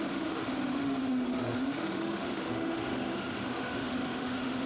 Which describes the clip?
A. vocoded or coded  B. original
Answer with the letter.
A